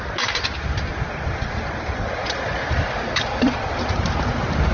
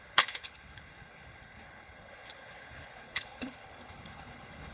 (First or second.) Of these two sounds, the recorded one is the first